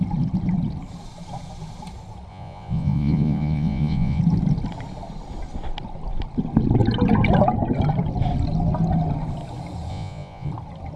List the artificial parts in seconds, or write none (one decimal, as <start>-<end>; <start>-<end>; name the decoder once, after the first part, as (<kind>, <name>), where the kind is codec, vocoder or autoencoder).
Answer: 2.3-4.2 (vocoder, Vocos); 9.9-10.5